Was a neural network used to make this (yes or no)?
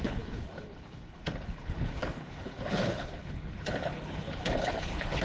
yes